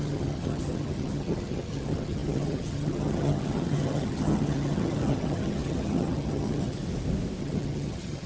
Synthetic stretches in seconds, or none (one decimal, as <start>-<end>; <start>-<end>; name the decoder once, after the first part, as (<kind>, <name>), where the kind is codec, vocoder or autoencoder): 0.0-6.8 (vocoder, HiFi-GAN); 7.4-8.3